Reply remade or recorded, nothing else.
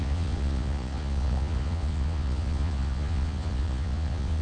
remade